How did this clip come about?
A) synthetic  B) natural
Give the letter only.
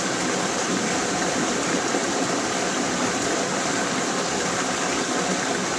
B